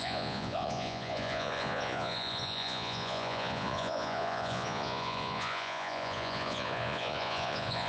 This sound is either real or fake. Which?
fake